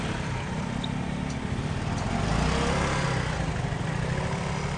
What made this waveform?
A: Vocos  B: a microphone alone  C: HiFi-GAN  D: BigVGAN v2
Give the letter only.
B